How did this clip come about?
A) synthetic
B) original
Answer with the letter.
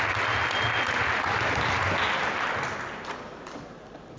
B